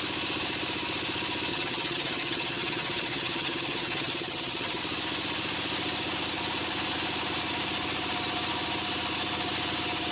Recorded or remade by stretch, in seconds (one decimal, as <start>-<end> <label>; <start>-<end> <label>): 0.0-1.5 recorded; 1.5-4.8 remade; 4.8-10.1 recorded